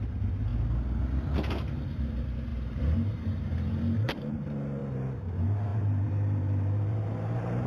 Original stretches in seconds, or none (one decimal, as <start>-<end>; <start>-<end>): 0.5-1.5; 4.8-5.3